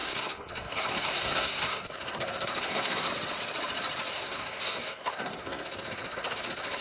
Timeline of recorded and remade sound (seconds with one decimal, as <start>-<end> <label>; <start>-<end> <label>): 0.0-3.1 remade; 3.1-4.1 recorded; 4.1-6.8 remade